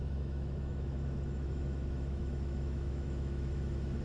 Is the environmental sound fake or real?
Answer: fake